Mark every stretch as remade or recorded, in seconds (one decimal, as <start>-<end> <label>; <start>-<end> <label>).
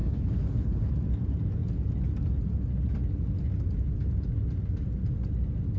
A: 0.0-0.9 remade; 0.9-5.8 recorded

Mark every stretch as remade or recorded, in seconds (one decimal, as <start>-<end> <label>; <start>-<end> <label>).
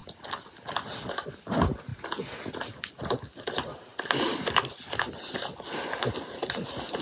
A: 0.0-1.3 recorded; 1.3-1.9 remade; 1.9-3.0 recorded; 3.0-3.9 remade; 3.9-6.3 recorded; 6.3-7.0 remade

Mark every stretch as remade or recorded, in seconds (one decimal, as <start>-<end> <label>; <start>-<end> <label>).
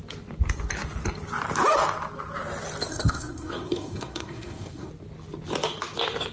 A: 0.0-2.9 recorded; 2.9-4.9 remade; 4.9-6.3 recorded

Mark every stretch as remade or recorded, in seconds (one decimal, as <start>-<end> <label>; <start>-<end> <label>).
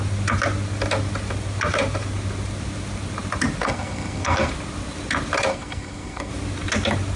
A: 0.0-3.6 recorded; 3.6-4.5 remade; 4.5-5.5 recorded; 5.5-6.3 remade; 6.3-7.2 recorded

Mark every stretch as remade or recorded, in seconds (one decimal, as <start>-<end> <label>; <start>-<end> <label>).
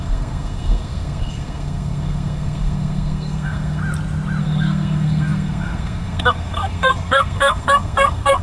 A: 0.0-3.8 remade; 3.8-4.4 recorded; 4.4-8.4 remade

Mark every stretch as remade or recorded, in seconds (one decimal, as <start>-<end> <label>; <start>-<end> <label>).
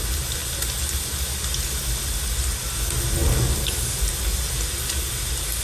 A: 0.0-5.6 recorded